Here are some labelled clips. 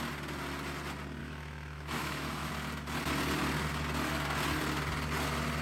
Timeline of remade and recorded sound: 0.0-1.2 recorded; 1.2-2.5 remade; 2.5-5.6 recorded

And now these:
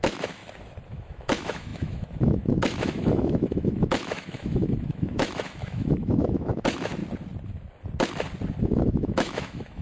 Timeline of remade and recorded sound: 0.0-0.4 remade; 0.4-0.9 recorded; 0.9-7.0 remade; 7.0-8.6 recorded; 8.6-9.8 remade